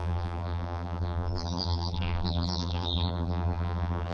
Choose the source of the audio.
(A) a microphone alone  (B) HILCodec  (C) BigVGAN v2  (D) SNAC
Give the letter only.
C